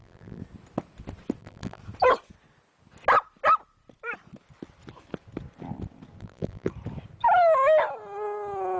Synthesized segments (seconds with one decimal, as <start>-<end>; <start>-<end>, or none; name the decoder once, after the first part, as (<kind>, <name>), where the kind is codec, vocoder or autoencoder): 0.0-0.4 (vocoder, BigVGAN v2); 1.4-1.8; 6.2-6.7